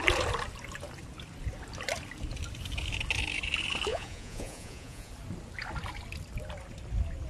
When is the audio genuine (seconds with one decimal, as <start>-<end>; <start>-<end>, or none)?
0.0-3.9; 5.1-7.3

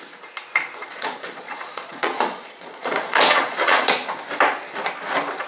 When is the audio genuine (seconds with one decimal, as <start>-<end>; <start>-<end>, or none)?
0.0-0.8; 4.1-5.5

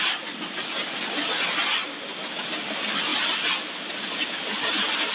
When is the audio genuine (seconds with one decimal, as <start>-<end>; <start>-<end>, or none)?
0.0-5.1

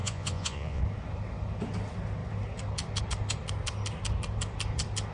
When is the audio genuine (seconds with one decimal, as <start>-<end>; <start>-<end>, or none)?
0.8-5.1

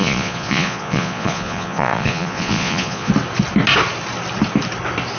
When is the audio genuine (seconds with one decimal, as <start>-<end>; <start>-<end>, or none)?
3.1-5.2

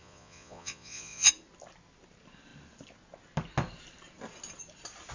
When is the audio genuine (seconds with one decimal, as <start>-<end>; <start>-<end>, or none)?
1.3-5.1

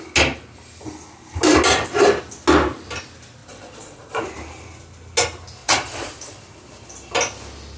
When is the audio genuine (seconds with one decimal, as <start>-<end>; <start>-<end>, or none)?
0.0-3.4; 4.2-5.6; 6.4-7.8